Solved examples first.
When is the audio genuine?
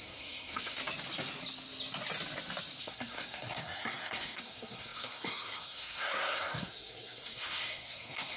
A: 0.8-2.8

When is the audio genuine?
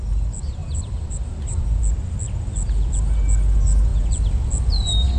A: 0.0-0.6; 1.8-5.2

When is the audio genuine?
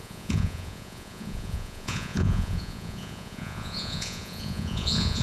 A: none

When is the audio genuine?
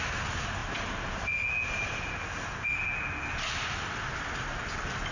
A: 0.0-5.1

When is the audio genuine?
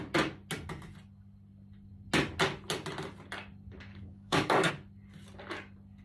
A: 0.0-3.9; 4.7-6.0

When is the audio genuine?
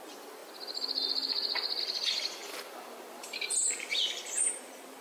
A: 0.0-5.0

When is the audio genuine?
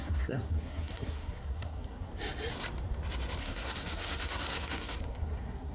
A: 2.1-3.4